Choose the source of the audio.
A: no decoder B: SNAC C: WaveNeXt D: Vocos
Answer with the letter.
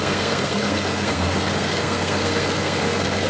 B